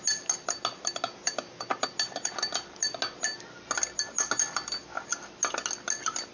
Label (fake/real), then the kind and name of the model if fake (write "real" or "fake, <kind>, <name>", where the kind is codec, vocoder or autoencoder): real